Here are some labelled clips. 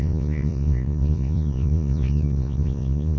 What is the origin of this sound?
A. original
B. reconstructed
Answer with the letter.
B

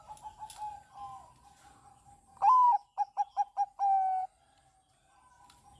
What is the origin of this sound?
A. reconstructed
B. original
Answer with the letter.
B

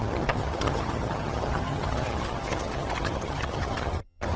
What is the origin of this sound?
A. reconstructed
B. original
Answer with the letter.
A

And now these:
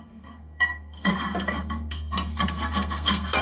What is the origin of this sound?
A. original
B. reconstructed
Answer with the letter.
B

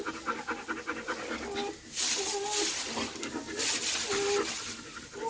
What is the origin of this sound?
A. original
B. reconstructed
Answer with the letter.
A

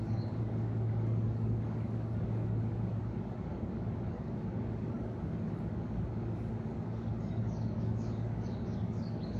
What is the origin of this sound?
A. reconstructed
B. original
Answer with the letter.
A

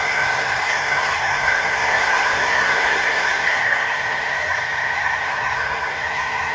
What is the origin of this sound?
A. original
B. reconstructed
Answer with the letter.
B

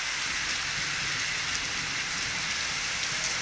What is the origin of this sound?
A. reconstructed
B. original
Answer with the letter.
B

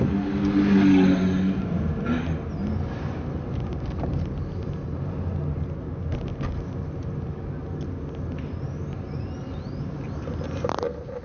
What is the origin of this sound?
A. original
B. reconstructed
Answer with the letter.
A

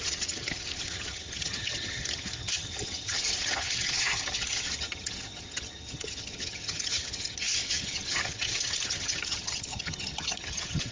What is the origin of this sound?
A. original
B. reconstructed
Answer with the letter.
B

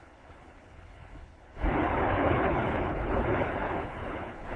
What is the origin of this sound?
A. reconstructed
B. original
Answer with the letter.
A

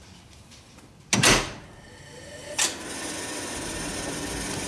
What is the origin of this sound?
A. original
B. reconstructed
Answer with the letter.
A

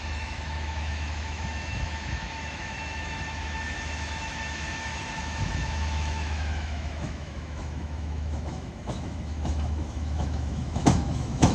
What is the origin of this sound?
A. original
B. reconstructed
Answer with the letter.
B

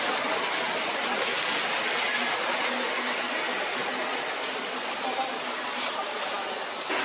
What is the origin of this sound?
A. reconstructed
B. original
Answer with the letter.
B